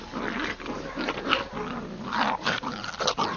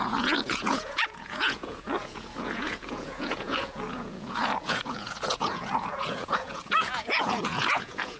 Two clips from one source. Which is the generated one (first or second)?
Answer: second